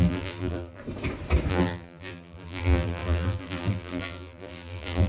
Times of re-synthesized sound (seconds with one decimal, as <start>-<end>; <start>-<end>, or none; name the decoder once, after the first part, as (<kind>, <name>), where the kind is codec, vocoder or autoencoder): 0.0-0.8 (vocoder, BigVGAN v2); 1.5-5.1